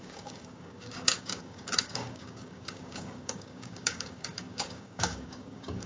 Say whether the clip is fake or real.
fake